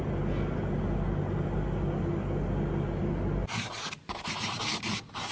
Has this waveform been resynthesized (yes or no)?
no